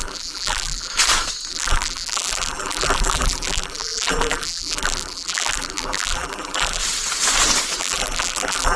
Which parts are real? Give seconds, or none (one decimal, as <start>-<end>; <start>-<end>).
0.9-1.5; 6.8-7.8